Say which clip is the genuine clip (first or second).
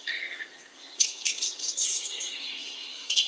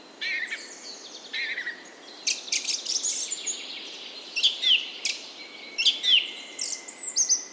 second